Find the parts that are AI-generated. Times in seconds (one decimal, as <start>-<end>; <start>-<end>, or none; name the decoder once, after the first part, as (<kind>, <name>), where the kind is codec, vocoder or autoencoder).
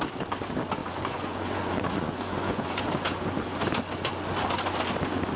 0.8-2.8 (vocoder, Vocos)